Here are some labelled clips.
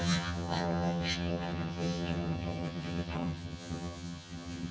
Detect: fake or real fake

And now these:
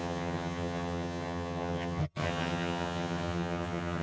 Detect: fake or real fake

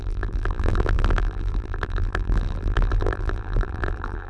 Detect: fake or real fake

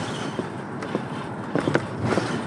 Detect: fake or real real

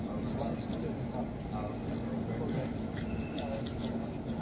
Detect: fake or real real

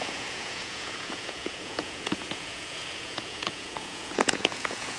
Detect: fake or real fake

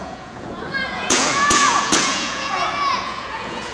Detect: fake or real fake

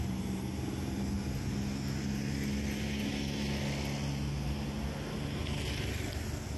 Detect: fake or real real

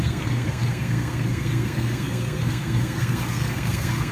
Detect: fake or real fake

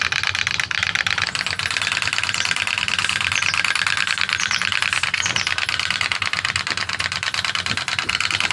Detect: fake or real real